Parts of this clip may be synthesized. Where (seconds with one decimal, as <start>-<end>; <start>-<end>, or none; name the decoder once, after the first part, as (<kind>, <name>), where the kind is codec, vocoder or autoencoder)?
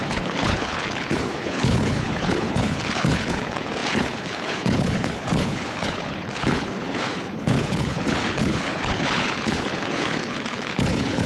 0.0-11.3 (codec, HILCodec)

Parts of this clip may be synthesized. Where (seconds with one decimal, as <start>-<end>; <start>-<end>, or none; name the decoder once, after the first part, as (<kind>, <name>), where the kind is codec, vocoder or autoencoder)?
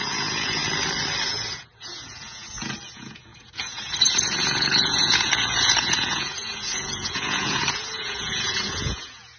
0.0-0.6 (vocoder, Vocos); 1.3-9.4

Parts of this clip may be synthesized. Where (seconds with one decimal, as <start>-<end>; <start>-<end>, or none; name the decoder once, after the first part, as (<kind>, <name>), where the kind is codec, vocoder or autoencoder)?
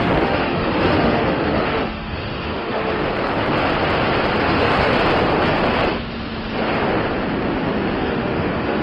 0.0-3.0 (autoencoder, DAC-VAE); 4.4-4.9; 8.0-8.8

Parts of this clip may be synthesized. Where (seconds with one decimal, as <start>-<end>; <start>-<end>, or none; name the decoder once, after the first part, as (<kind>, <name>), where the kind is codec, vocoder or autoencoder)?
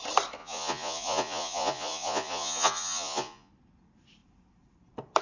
0.4-3.5 (vocoder, Vocos)